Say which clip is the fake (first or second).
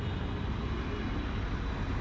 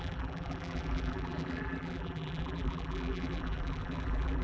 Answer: second